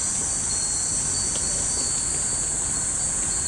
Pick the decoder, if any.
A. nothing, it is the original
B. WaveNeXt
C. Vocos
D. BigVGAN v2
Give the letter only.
A